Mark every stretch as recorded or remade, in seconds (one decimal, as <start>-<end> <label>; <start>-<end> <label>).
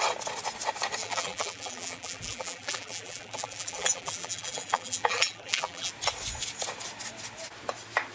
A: 0.0-1.0 recorded; 1.0-5.9 remade; 5.9-8.1 recorded